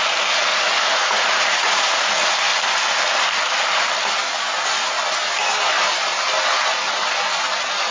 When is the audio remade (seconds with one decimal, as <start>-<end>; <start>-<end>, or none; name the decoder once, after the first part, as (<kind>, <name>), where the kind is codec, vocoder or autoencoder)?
0.5-2.1 (vocoder, Vocos)